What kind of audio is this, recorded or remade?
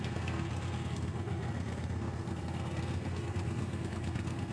remade